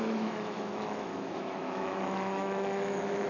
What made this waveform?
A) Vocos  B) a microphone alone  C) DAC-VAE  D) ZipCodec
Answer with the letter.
C